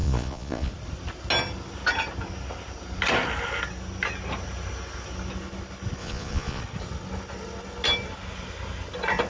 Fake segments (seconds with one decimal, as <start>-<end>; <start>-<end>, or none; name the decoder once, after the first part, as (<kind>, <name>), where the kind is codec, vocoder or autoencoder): 0.0-0.7 (vocoder, Vocos); 6.0-6.6